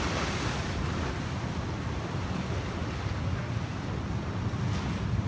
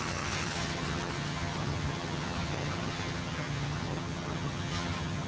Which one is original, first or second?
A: first